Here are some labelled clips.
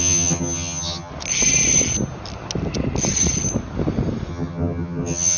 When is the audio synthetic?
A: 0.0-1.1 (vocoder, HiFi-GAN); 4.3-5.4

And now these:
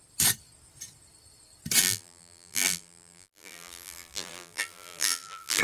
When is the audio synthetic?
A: 1.8-5.6 (vocoder, BigVGAN v2)

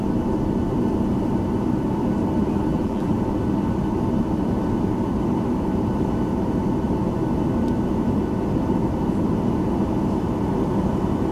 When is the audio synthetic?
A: 2.7-3.2 (vocoder, BigVGAN v2)

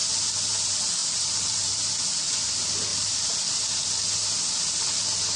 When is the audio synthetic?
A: 1.0-1.9 (vocoder, BigVGAN v2); 2.9-3.6

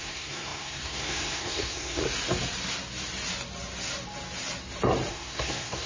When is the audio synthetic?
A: 0.0-2.0 (codec, SNAC); 5.1-5.9

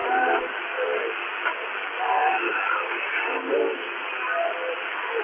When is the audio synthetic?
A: none

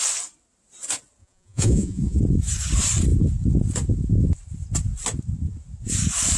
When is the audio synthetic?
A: 1.2-2.2 (vocoder, Vocos)